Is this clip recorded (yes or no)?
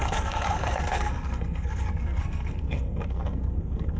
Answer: no